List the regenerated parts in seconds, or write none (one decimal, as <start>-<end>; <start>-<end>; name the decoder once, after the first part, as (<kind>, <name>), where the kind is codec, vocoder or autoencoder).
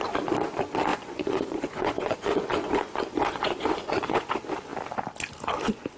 0.9-4.3 (vocoder, Vocos)